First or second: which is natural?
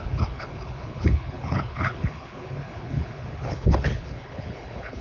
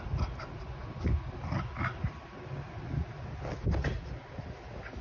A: second